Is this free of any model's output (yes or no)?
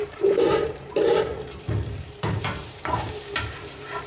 no